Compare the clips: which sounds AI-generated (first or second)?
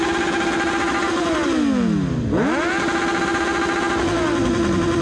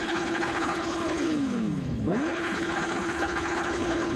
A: second